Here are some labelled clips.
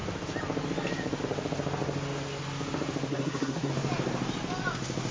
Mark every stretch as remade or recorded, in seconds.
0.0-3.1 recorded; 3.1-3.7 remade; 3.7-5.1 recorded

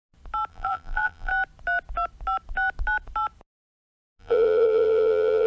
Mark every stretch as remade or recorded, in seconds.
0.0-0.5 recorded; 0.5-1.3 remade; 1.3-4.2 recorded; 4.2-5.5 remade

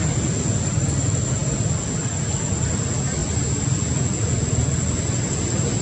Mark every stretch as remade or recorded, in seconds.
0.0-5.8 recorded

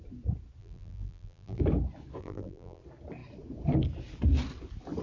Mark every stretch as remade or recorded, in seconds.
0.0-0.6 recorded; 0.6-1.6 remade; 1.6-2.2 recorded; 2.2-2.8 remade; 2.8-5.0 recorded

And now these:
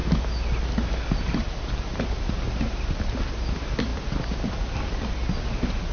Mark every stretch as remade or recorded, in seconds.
0.0-5.9 recorded

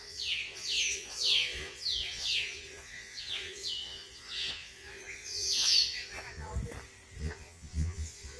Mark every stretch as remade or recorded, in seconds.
0.0-6.5 remade; 6.5-7.2 recorded; 7.2-8.4 remade

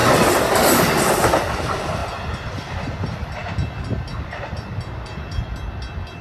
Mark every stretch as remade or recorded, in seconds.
0.0-6.2 recorded